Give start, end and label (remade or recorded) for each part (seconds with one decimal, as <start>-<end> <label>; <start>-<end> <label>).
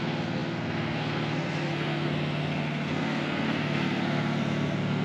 0.0-5.0 remade